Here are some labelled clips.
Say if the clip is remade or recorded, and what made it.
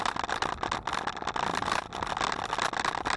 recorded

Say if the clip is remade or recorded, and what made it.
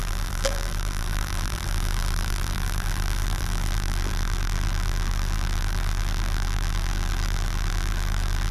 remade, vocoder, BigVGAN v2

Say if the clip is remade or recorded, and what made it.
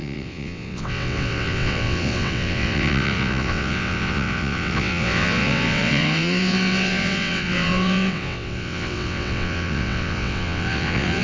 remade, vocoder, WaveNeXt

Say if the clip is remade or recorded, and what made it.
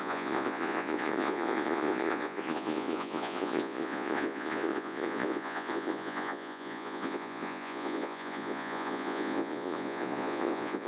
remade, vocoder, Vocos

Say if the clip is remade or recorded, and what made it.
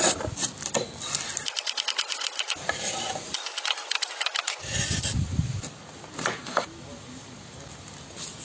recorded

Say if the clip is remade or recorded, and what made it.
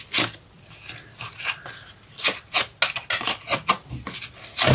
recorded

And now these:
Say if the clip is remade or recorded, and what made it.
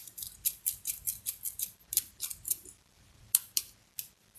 remade, vocoder, BigVGAN v2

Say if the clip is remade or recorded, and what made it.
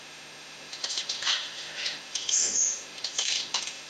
remade, autoencoder, DAC-VAE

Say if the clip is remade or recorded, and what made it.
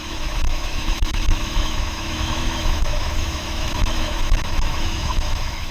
remade, autoencoder, DAC-VAE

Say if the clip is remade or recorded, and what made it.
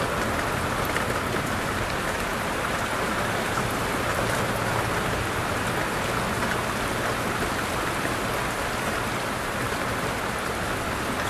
recorded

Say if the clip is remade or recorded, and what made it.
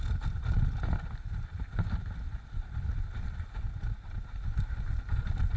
recorded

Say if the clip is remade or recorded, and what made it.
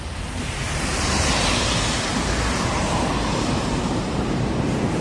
remade, vocoder, BigVGAN v2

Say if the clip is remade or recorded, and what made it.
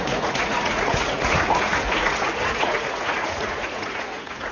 remade, vocoder, Vocos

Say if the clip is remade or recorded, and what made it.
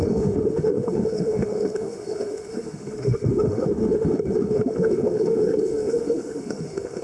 remade, autoencoder, DAC-VAE